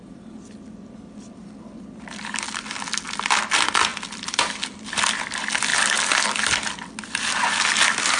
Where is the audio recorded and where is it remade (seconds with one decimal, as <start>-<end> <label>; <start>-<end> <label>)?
0.0-8.2 recorded